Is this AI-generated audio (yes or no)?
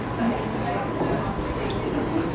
yes